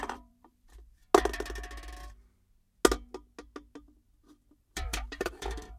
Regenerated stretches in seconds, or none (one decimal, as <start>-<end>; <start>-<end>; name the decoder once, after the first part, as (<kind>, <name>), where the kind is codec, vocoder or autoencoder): 0.0-1.0 (vocoder, BigVGAN v2); 4.5-5.8